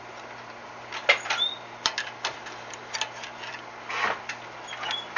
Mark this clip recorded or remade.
recorded